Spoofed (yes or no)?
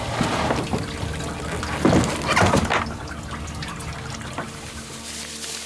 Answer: no